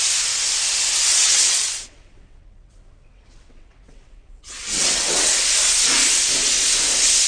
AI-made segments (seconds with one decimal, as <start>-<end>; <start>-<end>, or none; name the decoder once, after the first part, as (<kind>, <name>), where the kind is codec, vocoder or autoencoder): 1.1-5.3 (vocoder, WaveNeXt)